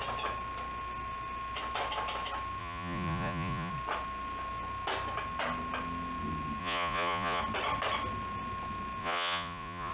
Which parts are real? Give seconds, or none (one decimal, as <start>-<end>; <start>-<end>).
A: 0.0-2.6; 3.7-6.6; 7.4-9.0